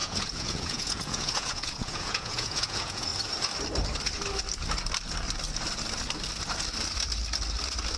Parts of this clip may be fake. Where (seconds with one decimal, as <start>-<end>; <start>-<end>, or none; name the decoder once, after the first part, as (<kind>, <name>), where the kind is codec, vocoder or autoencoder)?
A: 0.0-3.1 (vocoder, Vocos)